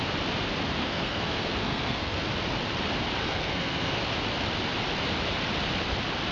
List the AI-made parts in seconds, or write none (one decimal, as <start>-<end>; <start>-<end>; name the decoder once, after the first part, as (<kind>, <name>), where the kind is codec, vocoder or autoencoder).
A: 0.8-2.3 (codec, SNAC); 3.2-4.0